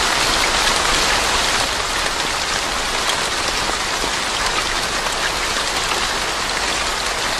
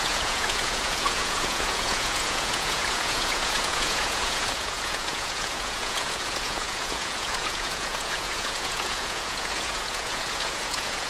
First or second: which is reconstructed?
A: second